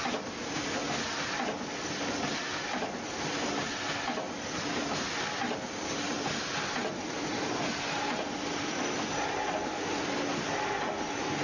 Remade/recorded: recorded